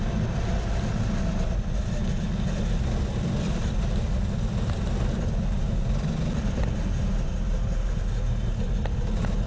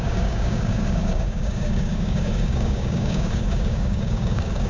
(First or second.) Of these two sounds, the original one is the first